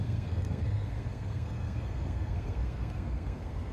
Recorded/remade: remade